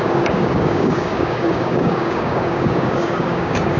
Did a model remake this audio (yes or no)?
yes